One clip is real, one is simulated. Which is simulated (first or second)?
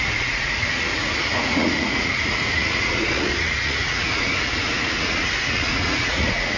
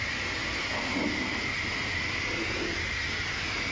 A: first